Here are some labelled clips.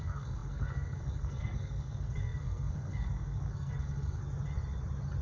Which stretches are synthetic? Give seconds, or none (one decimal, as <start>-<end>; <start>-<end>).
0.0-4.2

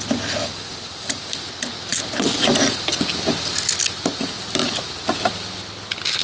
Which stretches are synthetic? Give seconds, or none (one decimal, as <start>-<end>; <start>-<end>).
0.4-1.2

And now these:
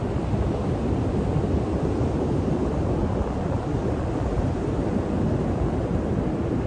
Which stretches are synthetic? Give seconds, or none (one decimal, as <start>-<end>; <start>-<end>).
3.0-5.2